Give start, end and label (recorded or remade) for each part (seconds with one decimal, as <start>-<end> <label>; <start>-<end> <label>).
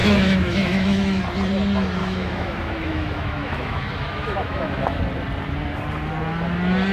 0.0-1.2 remade; 1.2-2.0 recorded; 2.0-5.0 remade; 5.0-6.9 recorded